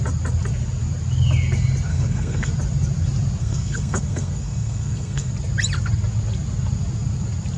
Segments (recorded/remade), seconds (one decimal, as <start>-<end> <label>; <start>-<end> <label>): 0.0-1.9 recorded; 1.9-2.5 remade; 2.5-3.4 recorded; 3.4-5.3 remade; 5.3-7.6 recorded